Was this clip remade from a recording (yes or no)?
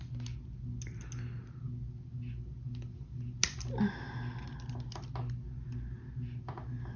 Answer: no